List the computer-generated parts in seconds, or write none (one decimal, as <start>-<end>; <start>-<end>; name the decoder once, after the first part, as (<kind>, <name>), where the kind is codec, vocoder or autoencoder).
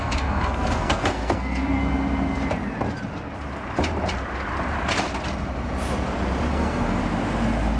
0.0-1.8 (codec, SNAC); 6.5-7.0